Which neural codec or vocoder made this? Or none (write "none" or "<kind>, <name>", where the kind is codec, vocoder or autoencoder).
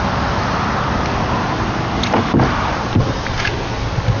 none